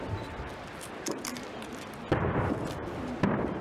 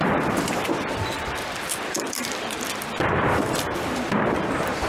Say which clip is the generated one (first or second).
second